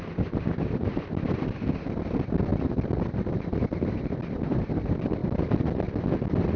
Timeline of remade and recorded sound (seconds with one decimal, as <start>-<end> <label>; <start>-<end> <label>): 0.0-5.2 remade; 5.2-6.6 recorded